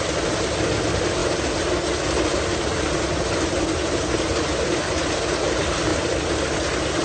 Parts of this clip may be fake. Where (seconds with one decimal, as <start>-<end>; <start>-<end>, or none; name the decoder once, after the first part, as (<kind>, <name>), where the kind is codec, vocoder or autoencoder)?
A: none